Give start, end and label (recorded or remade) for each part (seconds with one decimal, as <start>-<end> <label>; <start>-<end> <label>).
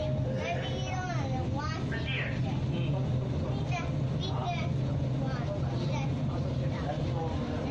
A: 0.0-7.7 recorded